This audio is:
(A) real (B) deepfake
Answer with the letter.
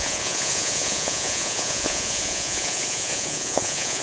B